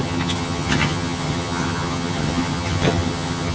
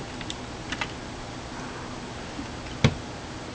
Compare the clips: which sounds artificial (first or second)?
first